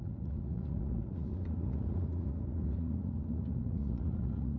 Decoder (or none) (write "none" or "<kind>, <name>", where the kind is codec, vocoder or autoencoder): vocoder, Vocos